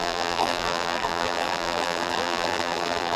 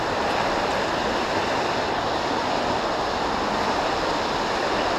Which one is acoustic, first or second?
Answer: second